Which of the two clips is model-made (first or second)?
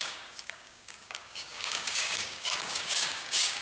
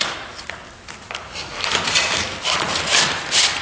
first